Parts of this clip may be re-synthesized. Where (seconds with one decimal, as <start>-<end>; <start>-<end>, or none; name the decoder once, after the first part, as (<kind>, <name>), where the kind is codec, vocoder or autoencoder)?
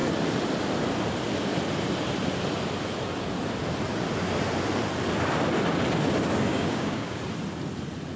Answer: 6.5-7.2 (codec, DAC)